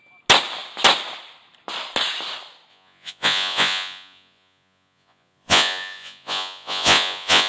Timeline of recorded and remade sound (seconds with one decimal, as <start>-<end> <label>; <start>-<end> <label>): 0.0-2.7 recorded; 2.7-7.5 remade